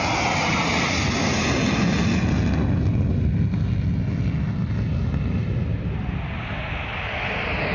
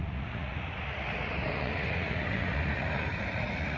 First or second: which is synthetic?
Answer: second